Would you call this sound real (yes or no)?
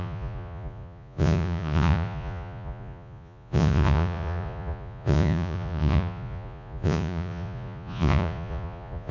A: no